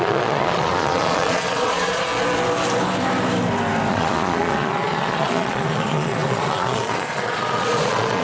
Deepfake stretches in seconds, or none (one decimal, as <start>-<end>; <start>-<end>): 0.0-2.1; 3.9-8.2